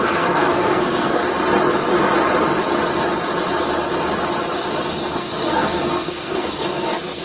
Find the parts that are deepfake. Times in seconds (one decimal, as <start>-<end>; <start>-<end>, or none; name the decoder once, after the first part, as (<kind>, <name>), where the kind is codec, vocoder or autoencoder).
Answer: 0.0-1.2 (codec, SNAC); 5.1-7.2